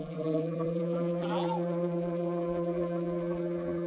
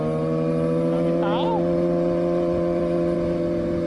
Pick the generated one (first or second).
first